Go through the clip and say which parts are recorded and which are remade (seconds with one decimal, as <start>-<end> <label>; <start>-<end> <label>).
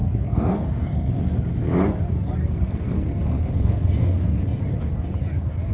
0.0-1.2 remade; 1.2-2.4 recorded; 2.4-4.4 remade; 4.4-5.7 recorded